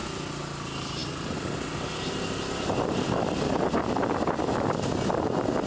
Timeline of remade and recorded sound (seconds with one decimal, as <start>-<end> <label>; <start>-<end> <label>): 0.0-5.7 recorded